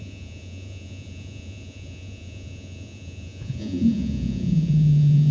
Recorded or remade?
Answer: remade